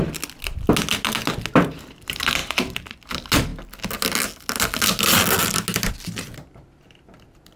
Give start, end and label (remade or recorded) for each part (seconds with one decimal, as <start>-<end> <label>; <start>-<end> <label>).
0.0-2.4 recorded; 2.4-3.1 remade; 3.1-7.6 recorded